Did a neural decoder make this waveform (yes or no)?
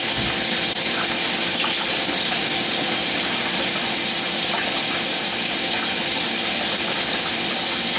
no